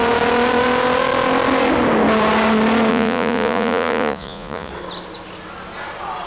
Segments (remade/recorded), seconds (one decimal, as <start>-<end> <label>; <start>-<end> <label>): 0.0-2.9 recorded; 2.9-4.7 remade; 4.7-6.3 recorded